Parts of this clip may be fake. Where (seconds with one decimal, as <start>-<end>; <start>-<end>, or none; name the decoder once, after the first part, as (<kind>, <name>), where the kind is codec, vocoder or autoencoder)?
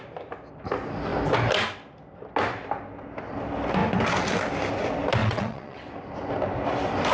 5.2-5.9 (vocoder, WaveNeXt)